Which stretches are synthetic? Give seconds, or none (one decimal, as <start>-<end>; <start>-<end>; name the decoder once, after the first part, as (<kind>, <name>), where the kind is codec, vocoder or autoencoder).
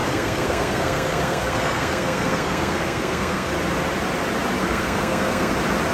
0.0-3.5 (codec, SNAC); 4.6-5.5